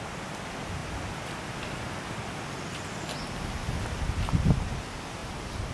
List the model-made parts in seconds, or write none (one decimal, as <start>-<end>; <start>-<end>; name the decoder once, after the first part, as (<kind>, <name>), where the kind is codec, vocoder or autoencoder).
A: none

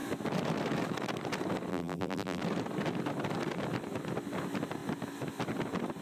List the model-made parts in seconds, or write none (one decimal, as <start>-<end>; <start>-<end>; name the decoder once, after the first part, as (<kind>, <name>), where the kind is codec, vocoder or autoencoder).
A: 1.7-2.4 (vocoder, BigVGAN v2)

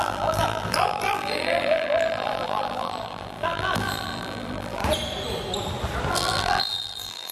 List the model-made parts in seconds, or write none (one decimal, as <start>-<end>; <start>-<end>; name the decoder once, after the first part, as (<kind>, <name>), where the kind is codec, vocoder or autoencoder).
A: 0.0-4.8 (vocoder, BigVGAN v2); 6.1-7.3

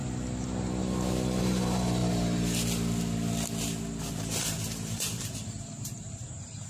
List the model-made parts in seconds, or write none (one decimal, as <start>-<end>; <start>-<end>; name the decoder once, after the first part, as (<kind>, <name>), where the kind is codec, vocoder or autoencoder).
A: 1.4-2.0 (vocoder, BigVGAN v2); 4.0-6.7

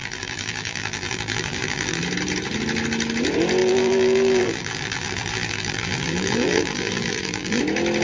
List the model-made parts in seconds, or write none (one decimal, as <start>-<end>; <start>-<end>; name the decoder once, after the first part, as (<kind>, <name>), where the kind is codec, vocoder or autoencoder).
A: 0.0-2.0 (vocoder, BigVGAN v2); 3.6-7.6

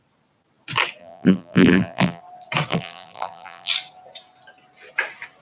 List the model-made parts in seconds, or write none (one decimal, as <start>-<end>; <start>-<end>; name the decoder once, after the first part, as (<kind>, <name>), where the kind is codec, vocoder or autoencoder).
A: 1.0-2.2 (vocoder, BigVGAN v2); 2.7-3.7

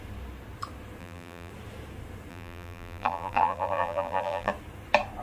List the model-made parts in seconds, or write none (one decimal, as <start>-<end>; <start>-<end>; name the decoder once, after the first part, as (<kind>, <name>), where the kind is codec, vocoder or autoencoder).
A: 1.0-1.5 (vocoder, BigVGAN v2); 2.3-4.5

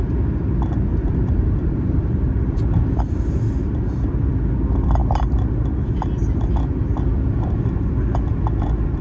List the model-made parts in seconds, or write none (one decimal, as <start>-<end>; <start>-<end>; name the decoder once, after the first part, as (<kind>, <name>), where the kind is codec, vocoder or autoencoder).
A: 0.9-3.0 (vocoder, BigVGAN v2)